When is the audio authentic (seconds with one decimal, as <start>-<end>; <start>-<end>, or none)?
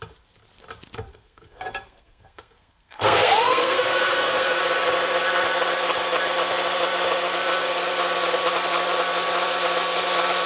0.0-1.1; 4.6-10.5